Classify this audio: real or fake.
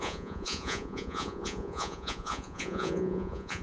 fake